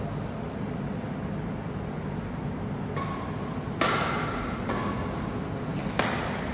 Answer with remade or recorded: recorded